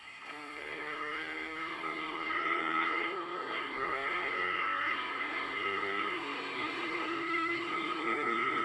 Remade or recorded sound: remade